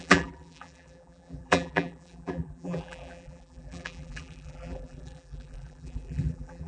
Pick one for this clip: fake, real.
fake